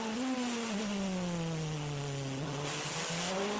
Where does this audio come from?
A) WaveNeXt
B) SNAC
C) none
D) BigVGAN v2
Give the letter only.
C